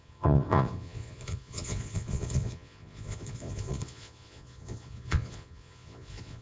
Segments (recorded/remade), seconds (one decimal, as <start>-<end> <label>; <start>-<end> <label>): 0.0-6.4 remade